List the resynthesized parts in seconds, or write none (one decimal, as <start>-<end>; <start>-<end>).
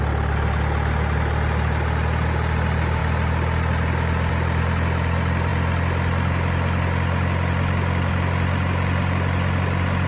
none